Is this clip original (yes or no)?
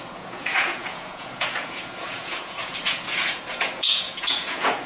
no